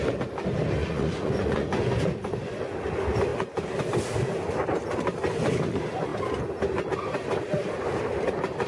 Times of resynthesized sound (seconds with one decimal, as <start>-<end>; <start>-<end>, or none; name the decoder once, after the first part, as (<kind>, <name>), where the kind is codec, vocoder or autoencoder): 0.8-2.6 (vocoder, Vocos)